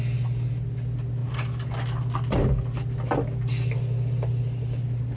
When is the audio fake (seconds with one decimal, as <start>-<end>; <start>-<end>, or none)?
none